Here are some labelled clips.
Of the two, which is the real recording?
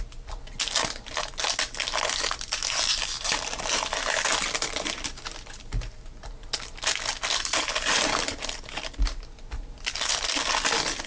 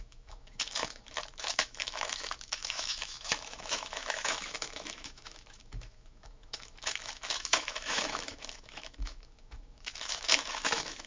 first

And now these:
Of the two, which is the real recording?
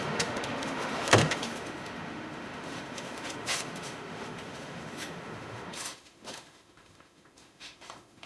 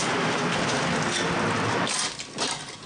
second